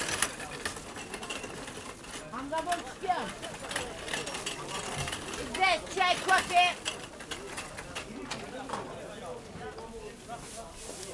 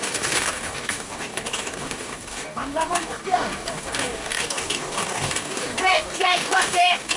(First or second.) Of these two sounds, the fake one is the second